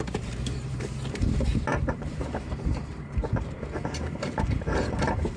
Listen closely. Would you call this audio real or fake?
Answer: fake